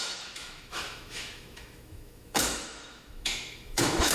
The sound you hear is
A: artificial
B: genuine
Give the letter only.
A